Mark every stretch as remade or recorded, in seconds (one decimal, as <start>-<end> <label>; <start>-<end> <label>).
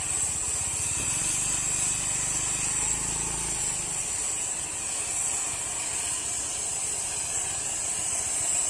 0.0-8.7 recorded